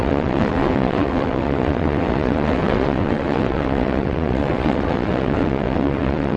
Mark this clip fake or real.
fake